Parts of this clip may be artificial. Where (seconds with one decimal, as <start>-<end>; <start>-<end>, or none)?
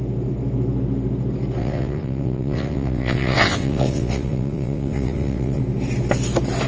1.6-5.6